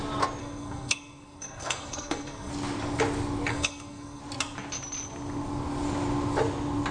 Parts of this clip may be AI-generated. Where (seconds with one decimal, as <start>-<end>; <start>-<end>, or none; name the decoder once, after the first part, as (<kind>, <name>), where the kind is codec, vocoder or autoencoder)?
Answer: 0.4-2.5 (codec, SNAC); 3.5-4.2